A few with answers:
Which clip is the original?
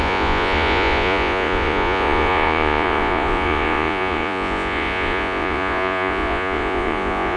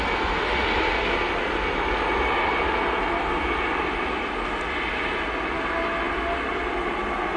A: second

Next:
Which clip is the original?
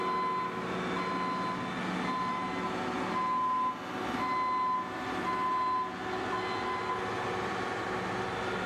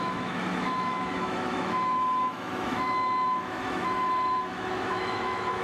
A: first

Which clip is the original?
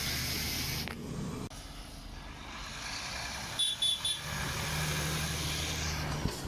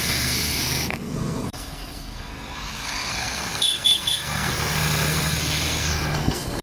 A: first